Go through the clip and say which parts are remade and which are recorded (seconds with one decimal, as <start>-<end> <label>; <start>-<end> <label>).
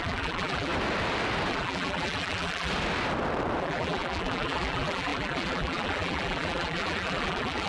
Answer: 0.0-0.7 remade; 0.7-1.5 recorded; 1.5-2.7 remade; 2.7-3.6 recorded; 3.6-7.7 remade